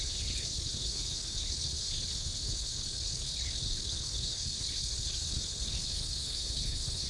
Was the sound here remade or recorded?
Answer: remade